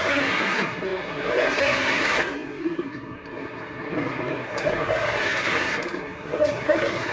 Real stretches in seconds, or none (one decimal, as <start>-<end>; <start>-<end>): none